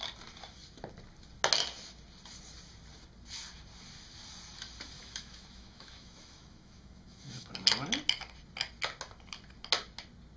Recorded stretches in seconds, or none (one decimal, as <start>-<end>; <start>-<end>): 0.0-5.0; 7.5-10.4